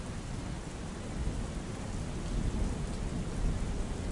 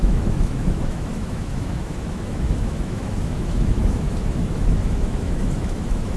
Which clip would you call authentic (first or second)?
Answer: first